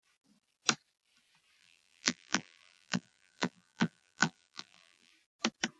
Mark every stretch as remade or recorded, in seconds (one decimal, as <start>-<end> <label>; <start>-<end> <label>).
0.0-1.6 recorded; 1.6-5.1 remade; 5.1-5.8 recorded